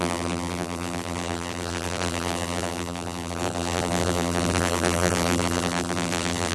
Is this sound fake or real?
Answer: fake